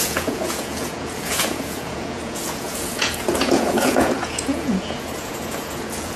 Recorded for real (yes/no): no